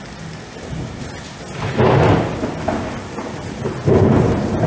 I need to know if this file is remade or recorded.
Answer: recorded